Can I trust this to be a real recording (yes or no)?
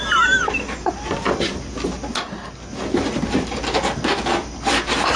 yes